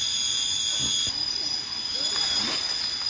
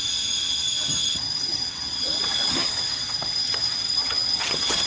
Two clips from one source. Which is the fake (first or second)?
second